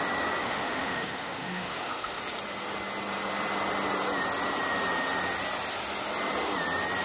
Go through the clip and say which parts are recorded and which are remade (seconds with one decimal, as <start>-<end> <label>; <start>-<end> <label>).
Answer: 0.0-0.4 recorded; 0.4-2.2 remade; 2.2-7.0 recorded